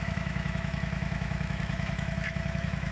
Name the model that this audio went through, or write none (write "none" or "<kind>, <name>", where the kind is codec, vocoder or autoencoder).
autoencoder, DAC-VAE